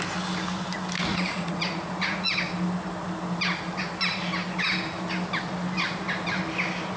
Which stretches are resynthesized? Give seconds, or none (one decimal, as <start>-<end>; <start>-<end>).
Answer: 1.1-2.3